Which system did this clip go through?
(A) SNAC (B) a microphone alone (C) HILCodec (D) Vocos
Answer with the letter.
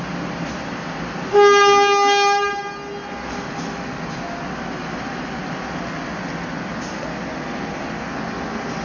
B